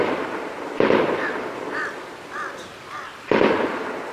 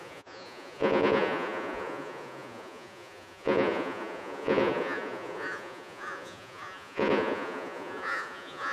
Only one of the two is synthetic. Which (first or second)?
second